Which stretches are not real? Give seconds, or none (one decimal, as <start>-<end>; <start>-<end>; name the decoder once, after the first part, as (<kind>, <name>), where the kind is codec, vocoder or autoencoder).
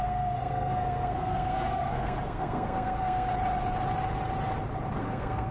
0.0-3.3 (codec, SNAC); 5.0-5.5